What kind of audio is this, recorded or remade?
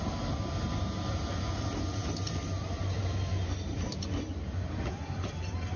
recorded